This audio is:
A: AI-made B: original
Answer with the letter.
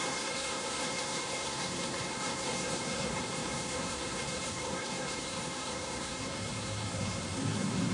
A